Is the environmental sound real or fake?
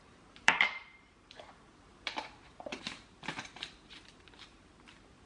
fake